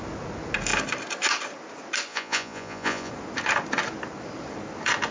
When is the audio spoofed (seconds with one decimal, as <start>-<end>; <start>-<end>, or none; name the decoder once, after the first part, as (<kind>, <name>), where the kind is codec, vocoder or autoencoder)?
2.1-3.1 (vocoder, Vocos)